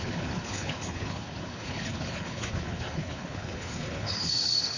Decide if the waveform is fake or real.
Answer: fake